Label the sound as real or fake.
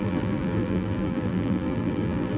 fake